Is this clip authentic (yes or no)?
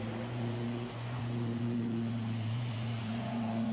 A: no